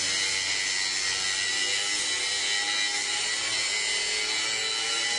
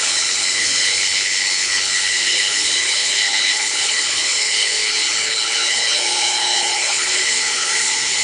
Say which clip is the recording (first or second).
first